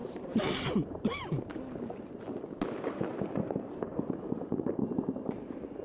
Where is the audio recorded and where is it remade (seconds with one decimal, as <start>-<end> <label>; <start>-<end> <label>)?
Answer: 0.0-2.1 remade; 2.1-3.1 recorded; 3.1-5.8 remade